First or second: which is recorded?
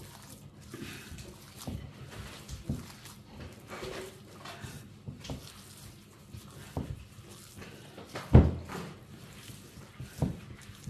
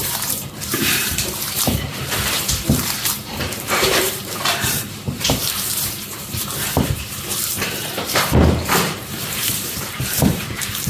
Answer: first